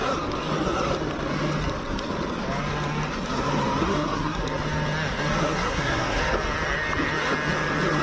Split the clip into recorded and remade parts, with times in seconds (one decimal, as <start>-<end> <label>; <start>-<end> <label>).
0.0-3.8 recorded; 3.8-4.4 remade; 4.4-5.4 recorded; 5.4-6.2 remade; 6.2-8.0 recorded